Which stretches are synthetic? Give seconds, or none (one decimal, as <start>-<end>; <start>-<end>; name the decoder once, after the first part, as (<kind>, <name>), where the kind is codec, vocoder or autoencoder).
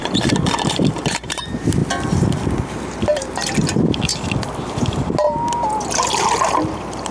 0.0-1.8 (vocoder, BigVGAN v2); 2.4-4.1